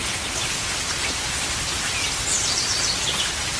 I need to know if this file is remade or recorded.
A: recorded